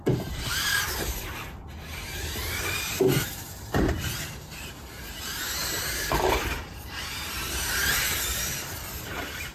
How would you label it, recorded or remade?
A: remade